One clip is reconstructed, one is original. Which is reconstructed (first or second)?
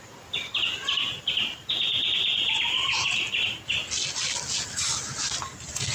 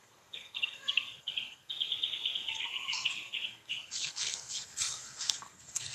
second